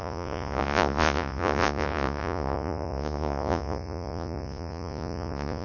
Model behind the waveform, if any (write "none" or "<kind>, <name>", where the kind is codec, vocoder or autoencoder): vocoder, Vocos